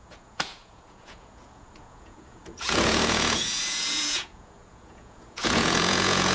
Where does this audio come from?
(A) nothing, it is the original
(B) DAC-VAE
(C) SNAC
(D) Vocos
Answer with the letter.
D